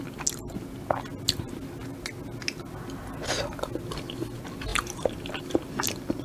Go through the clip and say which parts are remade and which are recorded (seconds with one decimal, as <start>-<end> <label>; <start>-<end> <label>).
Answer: 0.0-6.2 recorded